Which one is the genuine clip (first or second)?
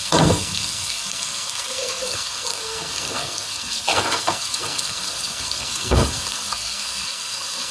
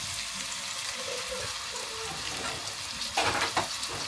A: second